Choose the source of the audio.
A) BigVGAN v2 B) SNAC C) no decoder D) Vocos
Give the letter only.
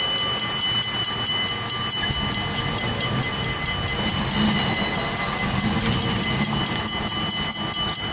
C